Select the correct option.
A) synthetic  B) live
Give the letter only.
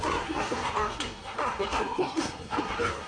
A